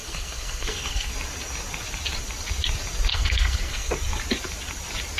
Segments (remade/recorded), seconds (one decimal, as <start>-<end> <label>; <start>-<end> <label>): 0.0-1.1 remade; 1.1-3.1 recorded; 3.1-3.9 remade; 3.9-5.2 recorded